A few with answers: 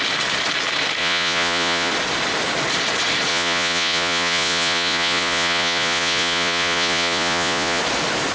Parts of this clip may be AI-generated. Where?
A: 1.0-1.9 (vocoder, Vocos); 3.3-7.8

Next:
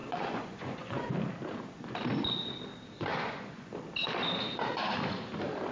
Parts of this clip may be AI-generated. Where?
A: 0.0-1.1 (vocoder, Vocos); 3.1-3.7

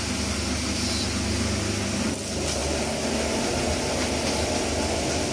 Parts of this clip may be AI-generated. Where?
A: none

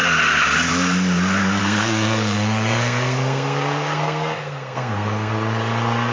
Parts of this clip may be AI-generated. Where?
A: 1.6-5.3 (codec, SNAC)

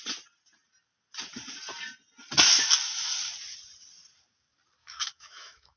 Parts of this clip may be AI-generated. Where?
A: 4.8-5.8 (autoencoder, DAC-VAE)

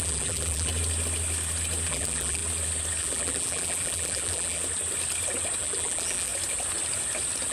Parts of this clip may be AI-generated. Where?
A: 0.0-0.7 (vocoder, BigVGAN v2); 1.9-2.4; 3.0-4.6; 5.6-6.3

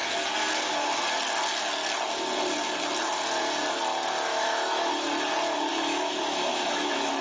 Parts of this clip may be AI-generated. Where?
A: 4.3-4.9 (autoencoder, DAC-VAE); 5.7-7.2

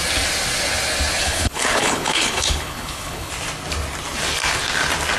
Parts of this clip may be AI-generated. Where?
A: 1.2-3.3 (codec, HILCodec)